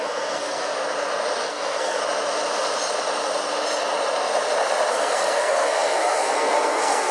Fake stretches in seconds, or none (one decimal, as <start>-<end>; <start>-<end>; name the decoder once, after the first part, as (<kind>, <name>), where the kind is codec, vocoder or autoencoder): 0.0-0.7 (codec, SNAC); 1.5-2.0; 4.9-7.1